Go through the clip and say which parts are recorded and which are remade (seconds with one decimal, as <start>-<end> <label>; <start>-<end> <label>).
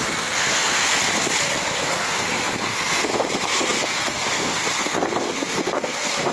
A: 0.0-1.0 remade; 1.0-1.8 recorded; 1.8-6.3 remade